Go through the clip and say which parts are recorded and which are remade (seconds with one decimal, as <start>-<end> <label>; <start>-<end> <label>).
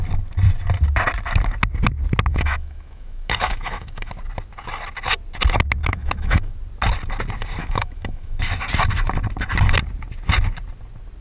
0.0-2.3 recorded; 2.3-4.1 remade; 4.1-5.8 recorded; 5.8-6.5 remade; 6.5-7.6 recorded; 7.6-8.4 remade; 8.4-11.2 recorded